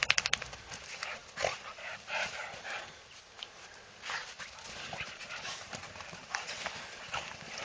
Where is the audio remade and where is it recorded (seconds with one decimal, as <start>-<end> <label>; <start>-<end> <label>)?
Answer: 0.0-7.6 recorded